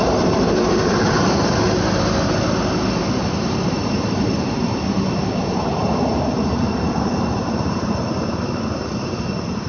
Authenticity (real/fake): fake